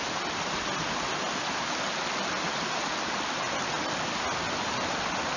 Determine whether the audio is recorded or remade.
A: recorded